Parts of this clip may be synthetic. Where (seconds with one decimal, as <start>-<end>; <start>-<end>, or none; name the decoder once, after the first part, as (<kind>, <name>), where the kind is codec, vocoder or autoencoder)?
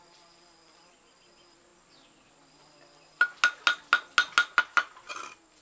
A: none